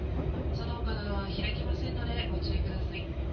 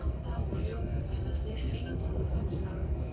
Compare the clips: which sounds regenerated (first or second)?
second